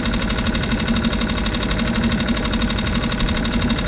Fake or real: real